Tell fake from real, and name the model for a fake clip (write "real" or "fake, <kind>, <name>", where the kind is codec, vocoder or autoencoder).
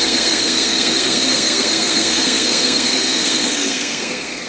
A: fake, codec, SNAC